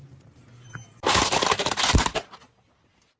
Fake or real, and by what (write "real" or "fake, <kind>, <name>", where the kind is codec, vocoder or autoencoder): real